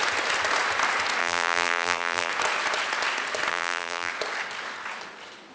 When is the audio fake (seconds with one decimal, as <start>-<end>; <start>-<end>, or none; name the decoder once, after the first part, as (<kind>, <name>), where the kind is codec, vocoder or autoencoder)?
1.2-2.3 (vocoder, BigVGAN v2); 3.5-4.1